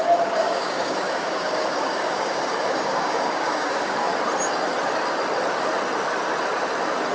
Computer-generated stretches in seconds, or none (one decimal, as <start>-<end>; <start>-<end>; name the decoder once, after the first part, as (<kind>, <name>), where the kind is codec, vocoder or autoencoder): 0.0-4.1 (codec, DAC)